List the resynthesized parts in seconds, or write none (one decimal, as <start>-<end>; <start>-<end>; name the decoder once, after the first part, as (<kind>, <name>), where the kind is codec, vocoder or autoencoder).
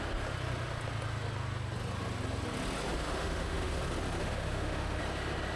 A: 2.9-3.8 (autoencoder, DAC-VAE); 4.2-5.0